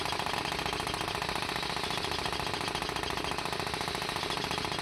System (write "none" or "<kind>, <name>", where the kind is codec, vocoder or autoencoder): none